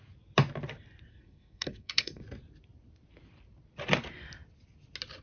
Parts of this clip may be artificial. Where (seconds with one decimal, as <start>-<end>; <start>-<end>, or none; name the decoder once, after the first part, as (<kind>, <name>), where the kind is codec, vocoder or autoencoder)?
1.1-2.2 (codec, SNAC)